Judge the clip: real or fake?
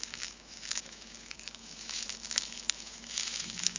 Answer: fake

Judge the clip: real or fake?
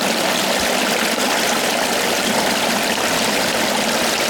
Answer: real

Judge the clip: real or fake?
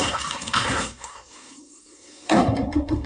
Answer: fake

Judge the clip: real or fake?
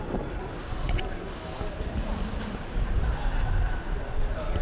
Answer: real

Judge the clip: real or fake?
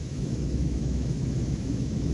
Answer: fake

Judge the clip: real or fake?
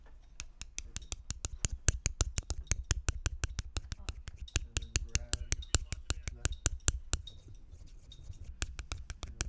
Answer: real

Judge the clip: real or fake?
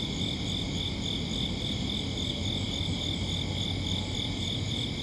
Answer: real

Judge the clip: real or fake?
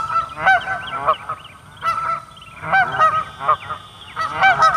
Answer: real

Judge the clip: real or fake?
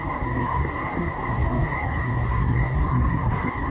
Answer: fake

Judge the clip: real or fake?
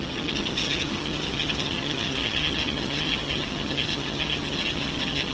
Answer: fake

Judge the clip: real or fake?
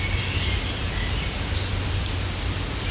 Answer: real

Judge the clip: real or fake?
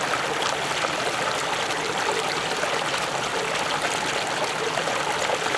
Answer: real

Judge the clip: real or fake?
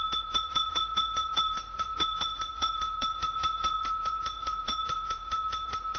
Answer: fake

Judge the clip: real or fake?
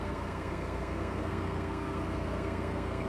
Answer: fake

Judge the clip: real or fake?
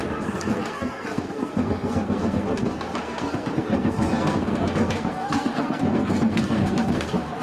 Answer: fake